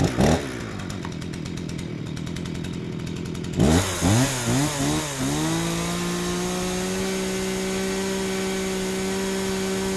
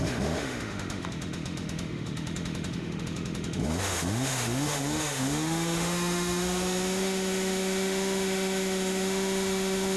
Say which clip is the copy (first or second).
second